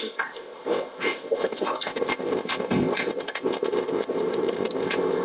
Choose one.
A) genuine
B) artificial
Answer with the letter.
B